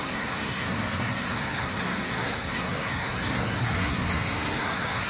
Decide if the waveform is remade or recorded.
remade